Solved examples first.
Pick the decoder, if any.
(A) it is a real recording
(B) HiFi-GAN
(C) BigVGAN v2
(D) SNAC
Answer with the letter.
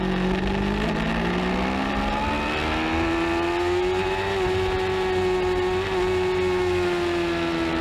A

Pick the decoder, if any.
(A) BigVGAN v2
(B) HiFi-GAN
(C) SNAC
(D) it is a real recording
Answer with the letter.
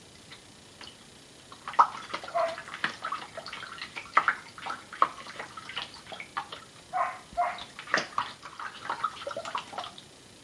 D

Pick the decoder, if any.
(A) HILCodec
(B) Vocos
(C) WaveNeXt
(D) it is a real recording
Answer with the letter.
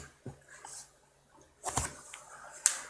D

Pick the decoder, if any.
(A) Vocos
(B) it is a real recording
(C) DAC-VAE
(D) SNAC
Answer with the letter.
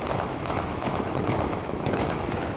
C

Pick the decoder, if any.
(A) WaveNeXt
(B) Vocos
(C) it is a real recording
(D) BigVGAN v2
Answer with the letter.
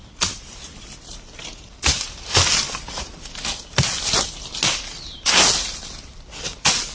C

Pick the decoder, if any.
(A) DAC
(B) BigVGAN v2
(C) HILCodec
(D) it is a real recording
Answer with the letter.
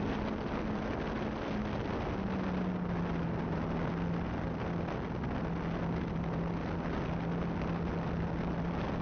D